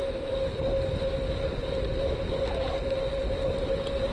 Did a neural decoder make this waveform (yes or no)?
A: no